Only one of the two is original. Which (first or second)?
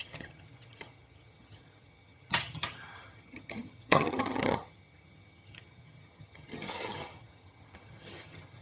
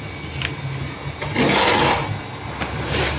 second